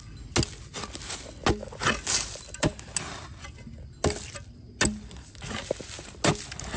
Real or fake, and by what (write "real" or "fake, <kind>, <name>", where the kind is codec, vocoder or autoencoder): real